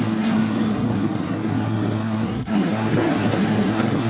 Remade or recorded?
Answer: remade